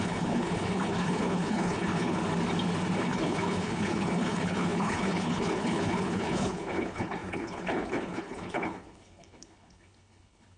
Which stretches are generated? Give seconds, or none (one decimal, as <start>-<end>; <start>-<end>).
0.0-2.2; 3.0-10.6